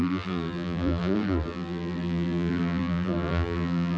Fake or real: fake